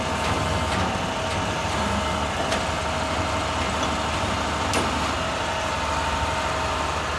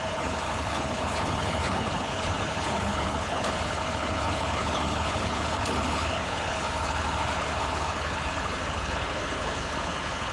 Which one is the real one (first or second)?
first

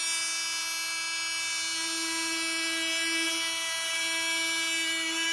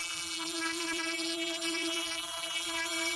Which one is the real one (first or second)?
first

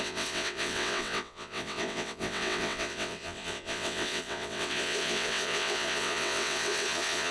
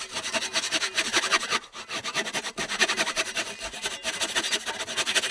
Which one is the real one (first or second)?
second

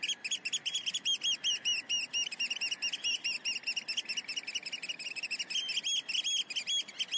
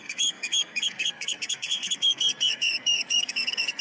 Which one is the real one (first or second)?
first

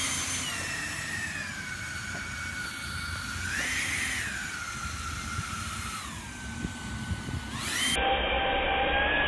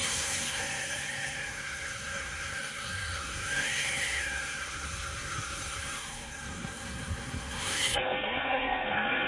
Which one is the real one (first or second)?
first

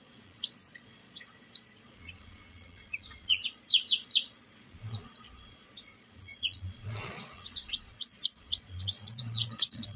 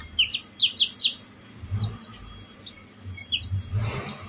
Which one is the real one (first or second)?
second